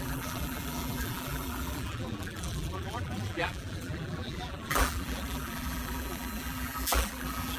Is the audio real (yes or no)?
no